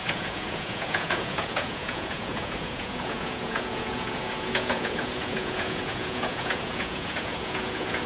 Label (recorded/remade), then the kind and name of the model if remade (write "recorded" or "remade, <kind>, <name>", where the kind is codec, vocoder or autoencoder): remade, vocoder, Vocos